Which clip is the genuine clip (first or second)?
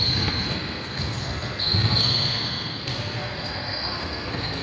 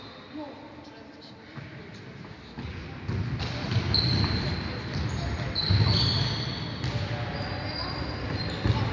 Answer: second